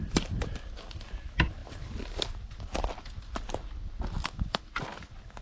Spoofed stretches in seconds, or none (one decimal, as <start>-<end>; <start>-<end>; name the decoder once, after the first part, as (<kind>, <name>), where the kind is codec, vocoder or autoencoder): none